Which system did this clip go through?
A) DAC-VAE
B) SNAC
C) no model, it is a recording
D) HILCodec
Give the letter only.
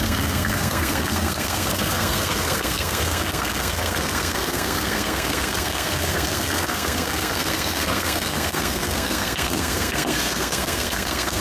B